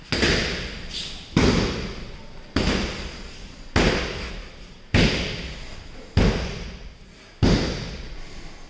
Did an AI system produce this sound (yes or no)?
no